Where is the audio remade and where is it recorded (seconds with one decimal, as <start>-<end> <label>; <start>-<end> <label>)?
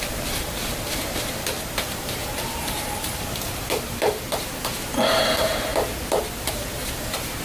0.0-5.7 remade; 5.7-6.5 recorded; 6.5-7.4 remade